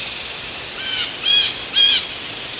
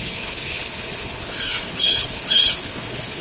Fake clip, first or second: second